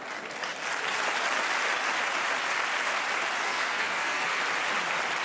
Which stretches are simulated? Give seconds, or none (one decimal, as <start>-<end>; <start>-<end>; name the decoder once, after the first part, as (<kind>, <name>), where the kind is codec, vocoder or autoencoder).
3.4-4.4 (codec, SNAC)